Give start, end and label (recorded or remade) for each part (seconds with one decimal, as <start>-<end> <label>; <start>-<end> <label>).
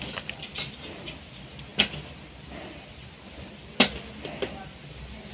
0.0-5.3 recorded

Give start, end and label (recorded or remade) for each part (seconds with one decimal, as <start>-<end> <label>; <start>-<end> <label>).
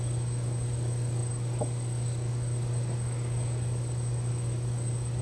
0.0-5.2 remade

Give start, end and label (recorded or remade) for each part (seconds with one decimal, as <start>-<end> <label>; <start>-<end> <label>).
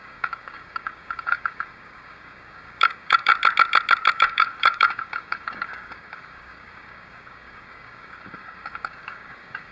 0.0-3.3 remade; 3.3-4.1 recorded; 4.1-9.7 remade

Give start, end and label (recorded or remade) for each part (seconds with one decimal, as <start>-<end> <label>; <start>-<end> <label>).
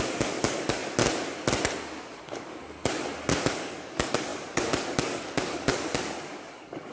0.0-0.8 remade; 0.8-2.0 recorded; 2.0-2.6 remade; 2.6-3.3 recorded; 3.3-6.9 remade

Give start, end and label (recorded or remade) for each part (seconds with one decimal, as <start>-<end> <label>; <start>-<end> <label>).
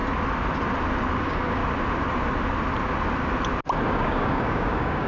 0.0-1.2 recorded; 1.2-1.6 remade; 1.6-3.9 recorded; 3.9-5.1 remade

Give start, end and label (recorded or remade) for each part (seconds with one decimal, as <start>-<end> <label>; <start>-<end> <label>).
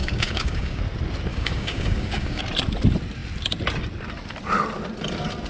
0.0-0.8 remade; 0.8-1.3 recorded; 1.3-2.4 remade; 2.4-5.5 recorded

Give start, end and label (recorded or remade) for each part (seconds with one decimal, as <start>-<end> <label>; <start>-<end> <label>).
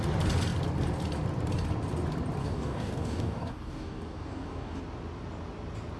0.0-2.4 recorded; 2.4-4.8 remade; 4.8-6.0 recorded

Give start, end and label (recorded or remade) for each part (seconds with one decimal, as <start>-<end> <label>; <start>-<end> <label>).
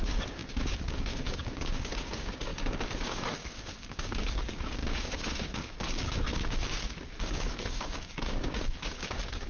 0.0-9.5 remade